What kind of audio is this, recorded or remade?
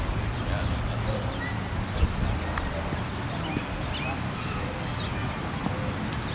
recorded